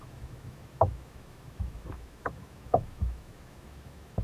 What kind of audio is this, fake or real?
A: fake